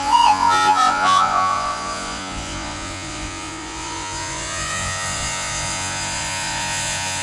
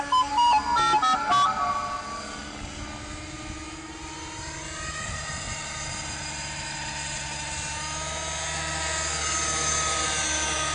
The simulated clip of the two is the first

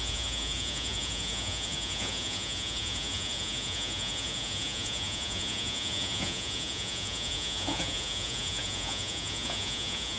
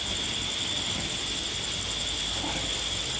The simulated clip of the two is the first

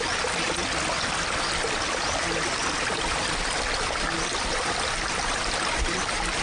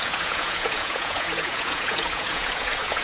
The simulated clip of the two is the second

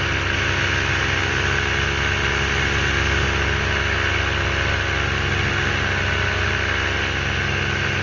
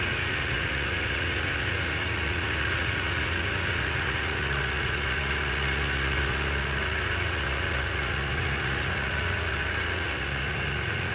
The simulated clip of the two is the second